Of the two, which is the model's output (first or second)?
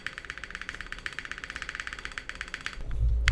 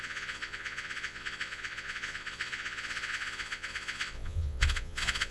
second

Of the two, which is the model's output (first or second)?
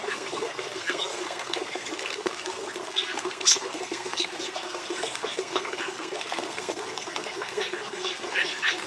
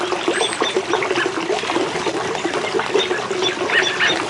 first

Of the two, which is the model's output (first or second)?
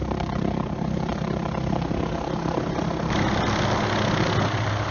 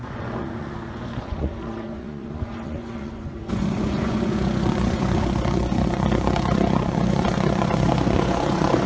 second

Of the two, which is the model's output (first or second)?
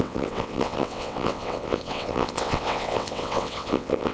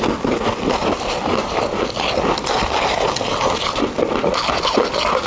first